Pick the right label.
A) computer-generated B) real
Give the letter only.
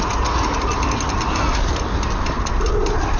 B